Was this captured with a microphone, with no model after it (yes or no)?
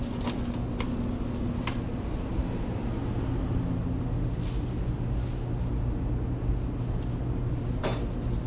yes